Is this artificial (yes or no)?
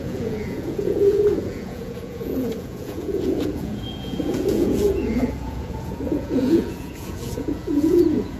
yes